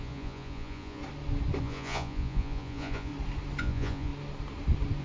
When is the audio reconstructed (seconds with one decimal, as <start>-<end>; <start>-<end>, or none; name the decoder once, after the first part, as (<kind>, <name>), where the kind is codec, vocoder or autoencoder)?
0.0-1.0 (vocoder, Vocos); 1.6-3.1; 3.6-4.1